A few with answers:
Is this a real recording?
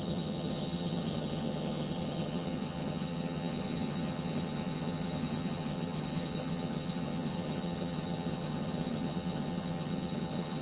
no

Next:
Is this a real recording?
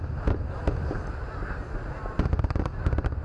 yes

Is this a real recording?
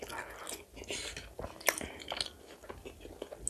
yes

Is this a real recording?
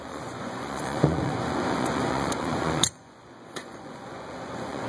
no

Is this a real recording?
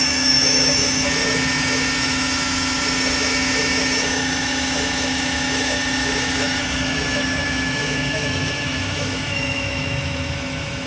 no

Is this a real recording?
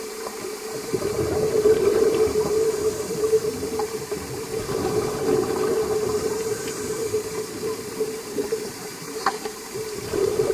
no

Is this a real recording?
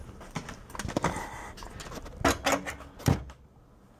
yes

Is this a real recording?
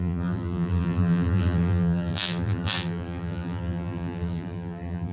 no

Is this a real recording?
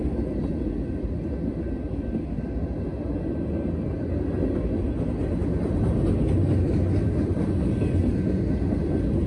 yes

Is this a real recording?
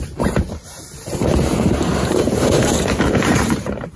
no